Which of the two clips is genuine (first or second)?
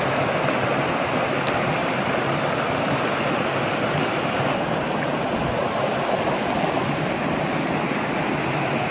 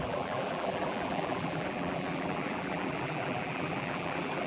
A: first